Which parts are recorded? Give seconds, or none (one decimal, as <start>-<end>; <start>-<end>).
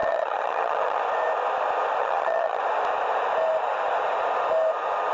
1.0-2.0; 2.6-5.1